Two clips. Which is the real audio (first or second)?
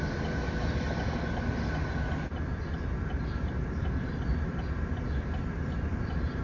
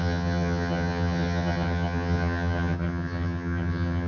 first